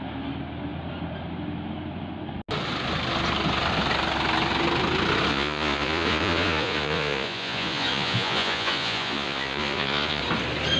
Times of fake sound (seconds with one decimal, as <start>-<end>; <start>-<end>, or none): 5.3-10.2